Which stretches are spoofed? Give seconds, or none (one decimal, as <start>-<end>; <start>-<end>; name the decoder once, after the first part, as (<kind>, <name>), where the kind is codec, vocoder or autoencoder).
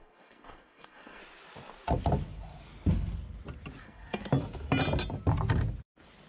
0.0-1.2 (codec, SNAC); 3.8-4.2